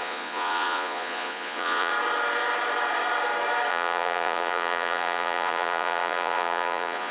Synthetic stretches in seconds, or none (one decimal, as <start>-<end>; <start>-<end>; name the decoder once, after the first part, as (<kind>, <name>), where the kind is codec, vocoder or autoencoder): 0.0-1.9 (vocoder, Vocos); 3.7-7.1

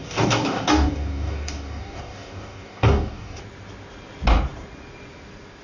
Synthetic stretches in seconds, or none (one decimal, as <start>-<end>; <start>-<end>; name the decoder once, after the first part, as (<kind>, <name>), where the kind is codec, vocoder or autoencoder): 0.0-3.4 (codec, DAC)

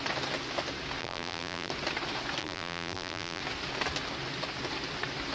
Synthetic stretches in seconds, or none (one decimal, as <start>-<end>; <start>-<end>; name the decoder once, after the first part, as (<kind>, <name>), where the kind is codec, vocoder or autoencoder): 1.0-1.7 (vocoder, BigVGAN v2); 2.4-3.4

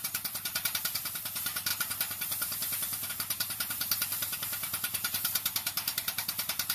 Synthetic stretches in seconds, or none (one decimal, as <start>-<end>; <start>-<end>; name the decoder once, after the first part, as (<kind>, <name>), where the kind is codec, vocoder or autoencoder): 0.0-1.7 (vocoder, BigVGAN v2); 3.1-3.8; 4.4-6.7

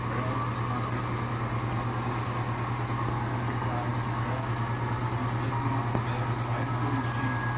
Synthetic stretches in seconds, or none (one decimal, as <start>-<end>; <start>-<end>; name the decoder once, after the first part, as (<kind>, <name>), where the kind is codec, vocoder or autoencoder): none

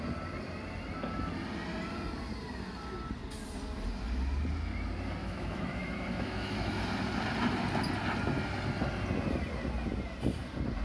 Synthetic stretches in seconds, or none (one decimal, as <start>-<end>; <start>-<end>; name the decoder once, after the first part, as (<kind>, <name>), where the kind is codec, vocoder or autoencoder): 5.2-6.8 (autoencoder, DAC-VAE)